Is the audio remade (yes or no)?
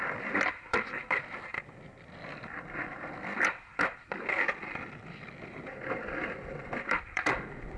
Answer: yes